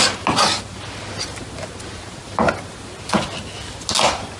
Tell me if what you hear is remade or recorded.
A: recorded